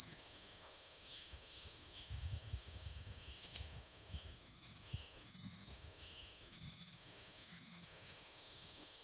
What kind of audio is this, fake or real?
fake